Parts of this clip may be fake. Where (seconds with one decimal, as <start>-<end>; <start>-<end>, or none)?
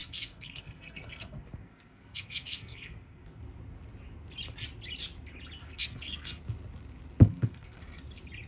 0.0-3.4; 5.6-6.4; 7.2-7.8